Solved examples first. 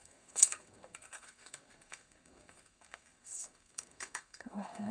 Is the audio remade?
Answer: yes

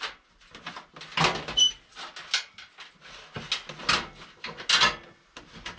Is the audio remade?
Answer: no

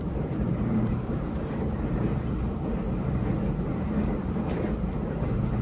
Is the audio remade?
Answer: yes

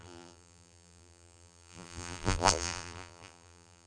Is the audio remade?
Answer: yes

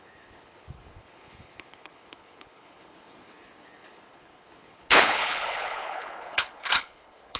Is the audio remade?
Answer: yes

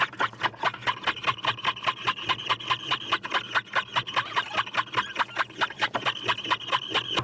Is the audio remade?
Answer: no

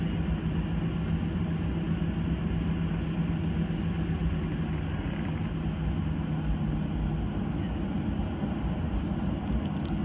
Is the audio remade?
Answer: no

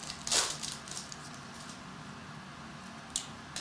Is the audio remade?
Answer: no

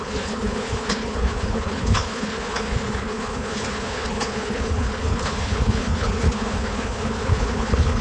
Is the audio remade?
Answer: yes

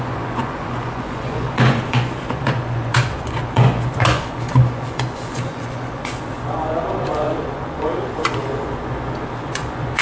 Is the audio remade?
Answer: yes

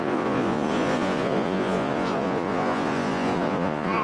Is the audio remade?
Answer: yes